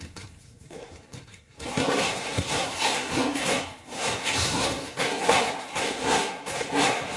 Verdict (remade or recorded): remade